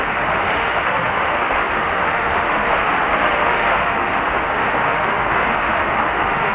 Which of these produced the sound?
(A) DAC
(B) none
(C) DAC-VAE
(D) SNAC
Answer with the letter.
C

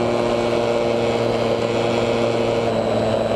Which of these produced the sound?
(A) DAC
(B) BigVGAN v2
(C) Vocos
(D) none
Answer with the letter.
D